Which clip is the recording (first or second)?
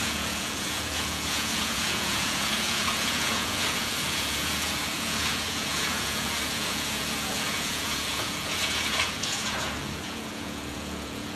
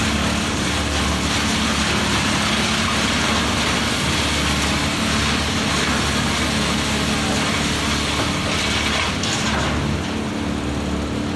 second